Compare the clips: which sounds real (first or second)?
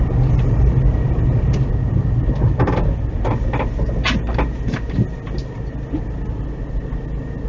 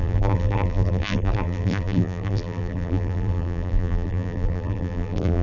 first